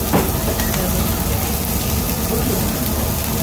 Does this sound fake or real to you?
real